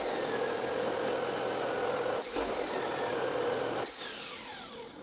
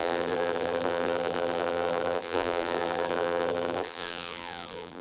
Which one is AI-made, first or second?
second